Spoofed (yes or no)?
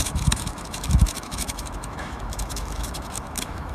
yes